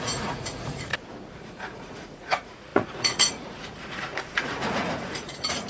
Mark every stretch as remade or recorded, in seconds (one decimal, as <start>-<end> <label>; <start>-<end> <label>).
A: 0.0-0.9 remade; 0.9-1.4 recorded; 1.4-5.7 remade